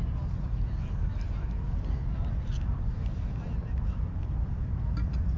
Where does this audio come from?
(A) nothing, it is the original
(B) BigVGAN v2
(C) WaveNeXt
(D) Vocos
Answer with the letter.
A